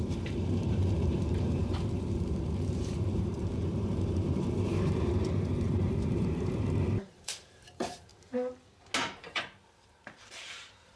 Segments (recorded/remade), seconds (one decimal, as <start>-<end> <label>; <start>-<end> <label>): 0.0-8.1 remade; 8.1-9.2 recorded; 9.2-11.0 remade